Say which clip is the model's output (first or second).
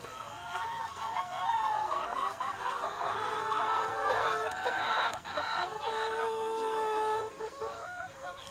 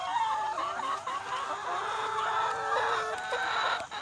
first